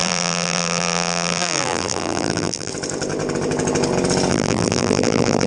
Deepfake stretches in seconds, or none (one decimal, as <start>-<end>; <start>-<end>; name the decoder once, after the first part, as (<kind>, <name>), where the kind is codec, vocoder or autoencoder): 0.0-2.7 (vocoder, BigVGAN v2); 4.3-5.5